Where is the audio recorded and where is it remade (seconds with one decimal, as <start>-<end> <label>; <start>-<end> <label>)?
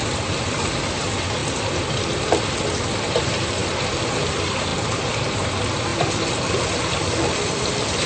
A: 0.0-1.4 recorded; 1.4-2.4 remade; 2.4-4.7 recorded; 4.7-5.5 remade; 5.5-5.9 recorded; 5.9-8.1 remade